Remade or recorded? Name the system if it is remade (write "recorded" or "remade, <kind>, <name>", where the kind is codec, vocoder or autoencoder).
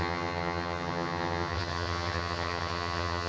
remade, vocoder, HiFi-GAN